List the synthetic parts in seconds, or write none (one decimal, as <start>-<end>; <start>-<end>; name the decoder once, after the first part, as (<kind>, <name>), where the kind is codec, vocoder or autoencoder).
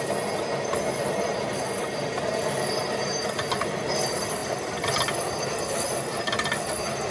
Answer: none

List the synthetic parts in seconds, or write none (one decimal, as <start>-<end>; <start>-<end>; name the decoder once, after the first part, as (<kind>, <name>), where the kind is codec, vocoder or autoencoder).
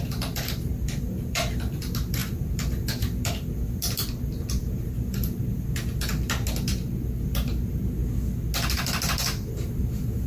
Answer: 0.0-6.1 (vocoder, BigVGAN v2); 6.7-8.0; 8.7-10.3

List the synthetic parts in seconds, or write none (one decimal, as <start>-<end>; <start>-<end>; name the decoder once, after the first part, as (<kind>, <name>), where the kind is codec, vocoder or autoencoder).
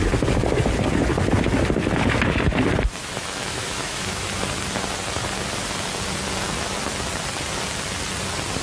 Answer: 3.0-4.3 (autoencoder, DAC-VAE)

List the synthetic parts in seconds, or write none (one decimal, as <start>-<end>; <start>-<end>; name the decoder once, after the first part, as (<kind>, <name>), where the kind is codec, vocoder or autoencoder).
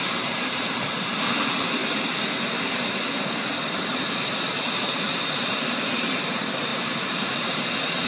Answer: 0.0-1.8 (vocoder, BigVGAN v2); 3.7-8.1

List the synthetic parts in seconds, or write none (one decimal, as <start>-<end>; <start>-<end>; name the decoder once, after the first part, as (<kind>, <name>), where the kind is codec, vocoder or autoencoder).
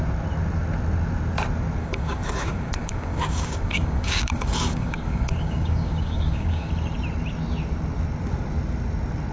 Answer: 1.8-6.7 (codec, DAC)